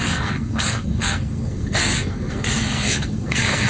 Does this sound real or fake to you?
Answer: fake